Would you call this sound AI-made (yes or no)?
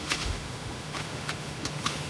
yes